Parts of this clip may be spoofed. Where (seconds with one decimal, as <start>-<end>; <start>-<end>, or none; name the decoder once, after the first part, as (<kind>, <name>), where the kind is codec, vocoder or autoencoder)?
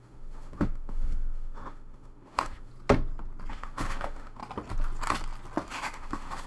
0.0-2.7 (autoencoder, DAC-VAE); 3.5-4.4; 5.7-6.5